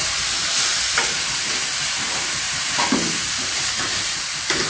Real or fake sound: fake